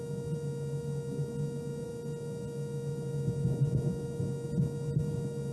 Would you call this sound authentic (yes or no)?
yes